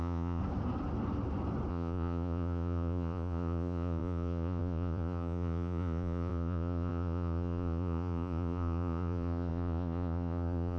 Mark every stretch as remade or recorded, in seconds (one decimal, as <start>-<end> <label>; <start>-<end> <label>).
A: 0.0-0.4 remade; 0.4-1.7 recorded; 1.7-10.8 remade